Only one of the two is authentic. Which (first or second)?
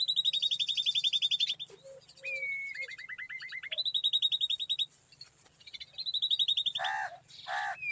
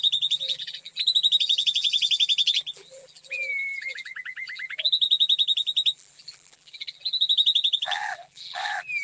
first